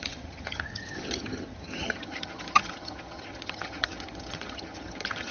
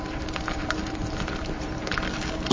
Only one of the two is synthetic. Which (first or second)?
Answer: first